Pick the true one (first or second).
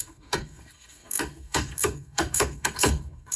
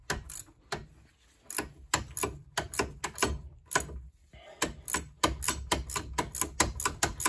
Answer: second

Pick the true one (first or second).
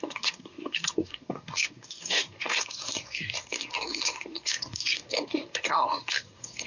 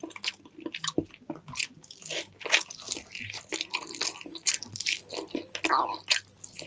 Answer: second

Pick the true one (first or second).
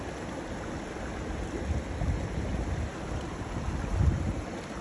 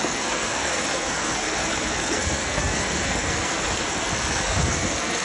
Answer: first